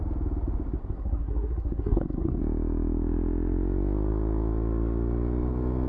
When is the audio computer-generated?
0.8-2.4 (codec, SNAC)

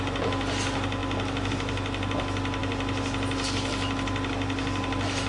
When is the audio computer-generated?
none

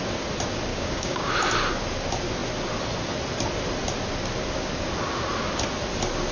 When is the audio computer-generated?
0.7-1.3 (codec, DAC)

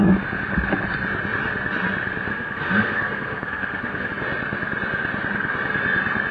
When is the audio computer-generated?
2.3-4.1 (codec, SNAC)